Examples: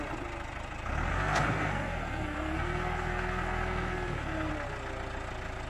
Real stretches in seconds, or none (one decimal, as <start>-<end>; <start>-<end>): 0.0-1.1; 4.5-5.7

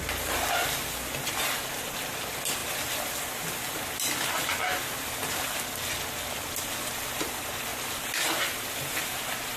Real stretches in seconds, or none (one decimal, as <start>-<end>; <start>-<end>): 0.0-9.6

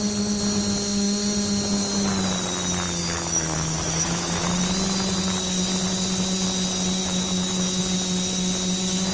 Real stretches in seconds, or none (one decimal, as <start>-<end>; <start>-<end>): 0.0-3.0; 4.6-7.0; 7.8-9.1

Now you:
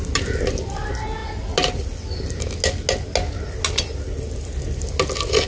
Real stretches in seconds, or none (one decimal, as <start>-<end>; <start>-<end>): 0.0-5.5

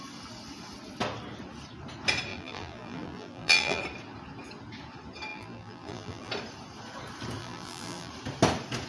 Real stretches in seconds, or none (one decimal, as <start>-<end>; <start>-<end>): 0.0-2.3; 3.8-5.3; 6.3-7.4; 8.1-8.9

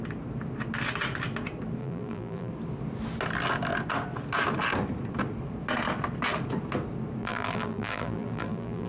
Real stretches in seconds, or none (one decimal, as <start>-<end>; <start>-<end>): 0.0-1.8; 2.5-7.2